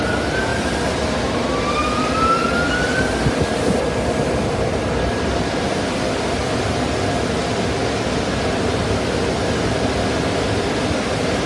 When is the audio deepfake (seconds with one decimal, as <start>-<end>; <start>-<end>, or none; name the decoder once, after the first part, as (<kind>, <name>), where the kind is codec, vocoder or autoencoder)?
none